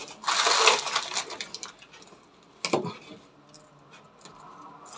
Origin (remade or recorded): recorded